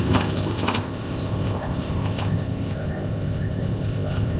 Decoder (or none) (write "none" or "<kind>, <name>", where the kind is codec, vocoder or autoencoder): codec, ZipCodec